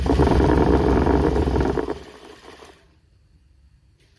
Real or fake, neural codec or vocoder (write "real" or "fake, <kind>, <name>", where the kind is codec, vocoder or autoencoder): fake, vocoder, BigVGAN v2